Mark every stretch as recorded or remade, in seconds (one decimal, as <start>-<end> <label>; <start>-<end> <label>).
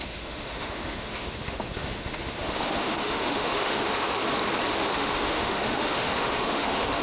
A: 0.0-4.2 remade; 4.2-4.9 recorded; 4.9-7.0 remade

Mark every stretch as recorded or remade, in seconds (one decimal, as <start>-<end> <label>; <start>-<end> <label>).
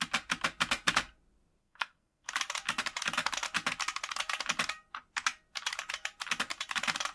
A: 0.0-1.6 recorded; 1.6-2.3 remade; 2.3-7.1 recorded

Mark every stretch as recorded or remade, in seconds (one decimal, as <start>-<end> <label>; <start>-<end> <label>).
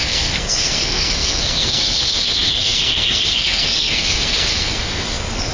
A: 0.0-5.5 remade